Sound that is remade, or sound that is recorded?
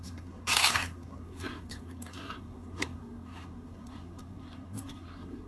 remade